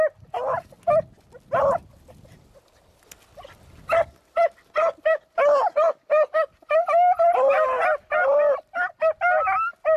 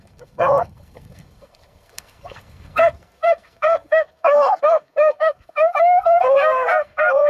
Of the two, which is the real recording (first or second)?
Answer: first